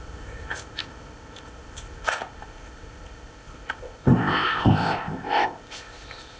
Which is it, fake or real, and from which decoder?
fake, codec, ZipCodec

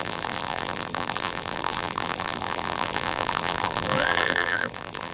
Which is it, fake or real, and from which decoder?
fake, vocoder, BigVGAN v2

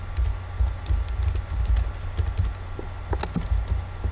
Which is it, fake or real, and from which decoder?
real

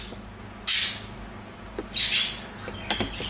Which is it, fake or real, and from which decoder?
real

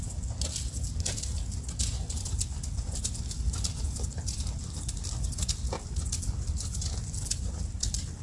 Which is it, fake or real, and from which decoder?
real